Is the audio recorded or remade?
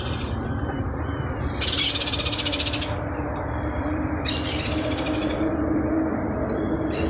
remade